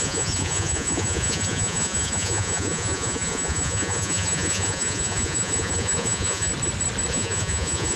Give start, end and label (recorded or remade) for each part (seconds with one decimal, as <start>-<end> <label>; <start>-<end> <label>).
0.0-6.5 remade; 6.5-7.1 recorded; 7.1-8.0 remade

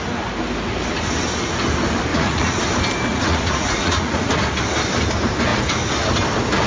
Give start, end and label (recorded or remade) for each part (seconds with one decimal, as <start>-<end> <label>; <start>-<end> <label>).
0.0-2.1 recorded; 2.1-2.6 remade; 2.6-3.1 recorded; 3.1-4.3 remade; 4.3-6.7 recorded